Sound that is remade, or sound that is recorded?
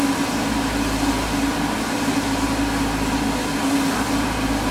recorded